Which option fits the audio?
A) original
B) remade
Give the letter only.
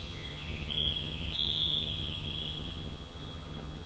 B